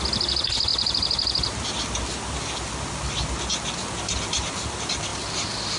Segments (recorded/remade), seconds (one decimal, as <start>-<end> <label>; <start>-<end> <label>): 0.0-5.8 recorded